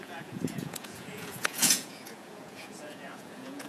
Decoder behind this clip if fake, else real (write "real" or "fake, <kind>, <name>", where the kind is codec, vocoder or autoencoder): fake, vocoder, Vocos